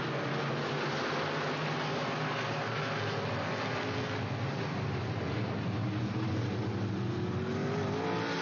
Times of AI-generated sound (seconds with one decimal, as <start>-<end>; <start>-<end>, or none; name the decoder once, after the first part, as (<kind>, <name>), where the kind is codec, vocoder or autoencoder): none